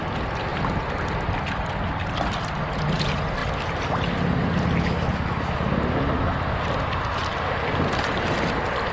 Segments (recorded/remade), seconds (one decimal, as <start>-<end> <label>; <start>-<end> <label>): 0.0-8.9 recorded